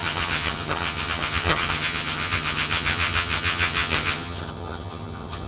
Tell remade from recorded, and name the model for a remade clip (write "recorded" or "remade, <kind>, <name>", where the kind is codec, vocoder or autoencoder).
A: remade, vocoder, HiFi-GAN